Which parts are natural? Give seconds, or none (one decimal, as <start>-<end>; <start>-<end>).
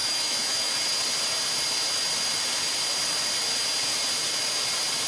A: 0.7-5.1